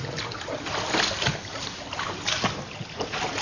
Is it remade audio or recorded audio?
recorded